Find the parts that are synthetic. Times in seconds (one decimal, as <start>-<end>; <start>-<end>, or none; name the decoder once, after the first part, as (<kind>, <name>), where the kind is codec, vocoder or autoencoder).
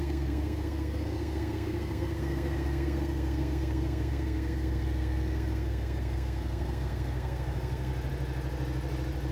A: 0.0-7.9 (codec, SNAC)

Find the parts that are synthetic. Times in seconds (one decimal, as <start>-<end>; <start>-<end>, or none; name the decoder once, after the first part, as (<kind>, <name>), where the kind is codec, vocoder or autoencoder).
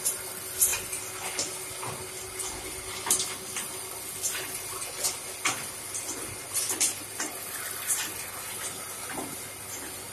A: none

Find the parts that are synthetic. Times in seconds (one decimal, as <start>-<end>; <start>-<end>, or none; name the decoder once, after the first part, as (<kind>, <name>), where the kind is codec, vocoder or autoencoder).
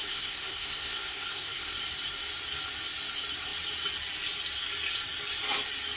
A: 0.0-1.7 (codec, SNAC)